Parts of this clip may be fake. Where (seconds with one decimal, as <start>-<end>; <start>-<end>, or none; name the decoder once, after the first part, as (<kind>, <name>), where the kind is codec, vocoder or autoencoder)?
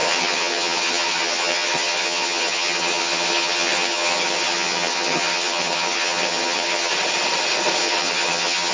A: 0.0-6.9 (vocoder, HiFi-GAN); 7.8-8.7